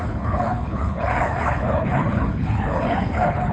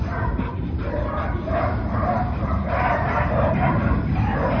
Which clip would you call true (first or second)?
second